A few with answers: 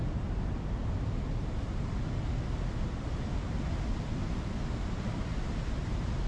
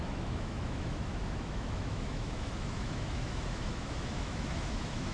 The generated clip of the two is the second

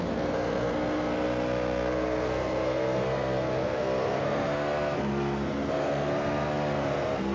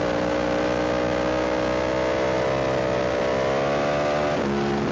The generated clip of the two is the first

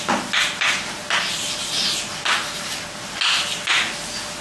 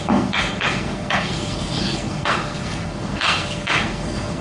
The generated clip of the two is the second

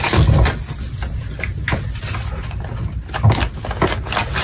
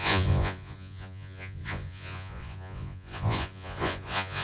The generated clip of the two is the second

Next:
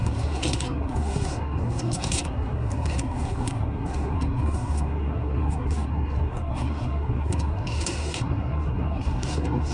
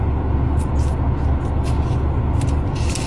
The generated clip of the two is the first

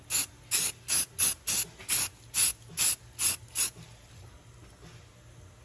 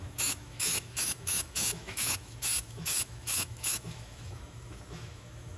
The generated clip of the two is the second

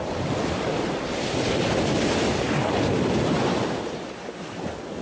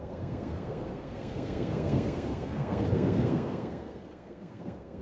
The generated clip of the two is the second